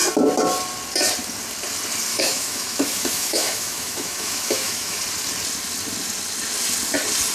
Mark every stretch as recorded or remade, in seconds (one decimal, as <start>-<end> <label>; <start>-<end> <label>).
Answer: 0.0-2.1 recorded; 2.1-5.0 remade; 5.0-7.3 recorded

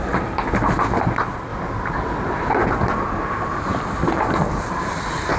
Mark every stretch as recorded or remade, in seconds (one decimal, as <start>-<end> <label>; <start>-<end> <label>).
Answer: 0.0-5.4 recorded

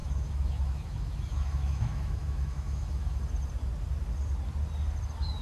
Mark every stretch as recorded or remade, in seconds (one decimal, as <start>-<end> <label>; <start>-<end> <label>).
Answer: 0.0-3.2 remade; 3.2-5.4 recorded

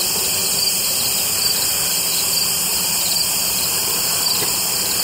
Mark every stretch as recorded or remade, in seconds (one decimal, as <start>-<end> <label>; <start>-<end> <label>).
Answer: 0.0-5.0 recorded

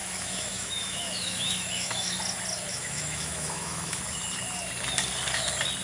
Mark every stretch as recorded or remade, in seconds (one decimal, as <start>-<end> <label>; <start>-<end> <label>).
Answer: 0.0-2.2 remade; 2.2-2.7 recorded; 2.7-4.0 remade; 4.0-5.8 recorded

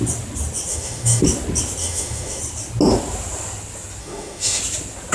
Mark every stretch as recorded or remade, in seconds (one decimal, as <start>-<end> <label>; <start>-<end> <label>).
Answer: 0.0-0.7 recorded; 0.7-1.2 remade; 1.2-1.8 recorded; 1.8-2.4 remade; 2.4-4.0 recorded; 4.0-4.6 remade; 4.6-5.1 recorded